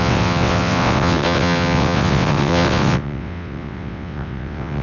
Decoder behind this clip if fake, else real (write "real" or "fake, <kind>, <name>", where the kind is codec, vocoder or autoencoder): fake, vocoder, WaveNeXt